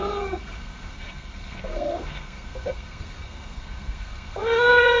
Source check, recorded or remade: remade